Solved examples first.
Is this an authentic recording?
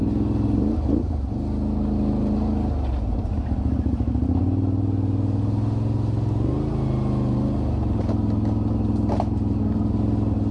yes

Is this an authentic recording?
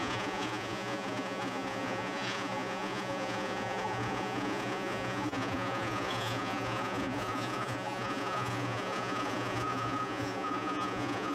no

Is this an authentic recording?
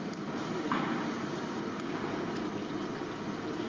yes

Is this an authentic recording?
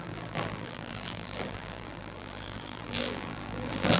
no